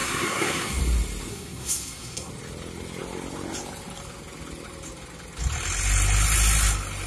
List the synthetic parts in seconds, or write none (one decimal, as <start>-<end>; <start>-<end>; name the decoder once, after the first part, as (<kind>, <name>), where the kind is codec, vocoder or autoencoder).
0.0-0.8 (codec, SNAC); 1.3-2.3